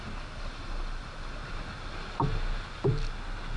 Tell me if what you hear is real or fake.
real